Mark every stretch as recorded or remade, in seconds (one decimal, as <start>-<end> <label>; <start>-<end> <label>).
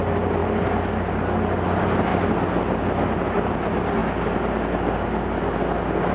0.0-6.1 recorded